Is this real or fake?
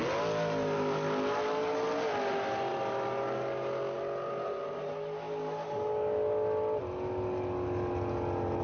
real